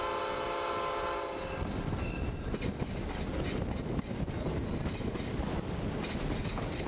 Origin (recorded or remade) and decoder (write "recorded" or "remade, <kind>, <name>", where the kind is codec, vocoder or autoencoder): recorded